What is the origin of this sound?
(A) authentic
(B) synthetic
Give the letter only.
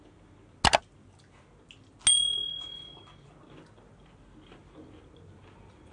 A